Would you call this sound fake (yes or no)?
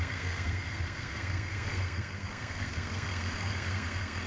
yes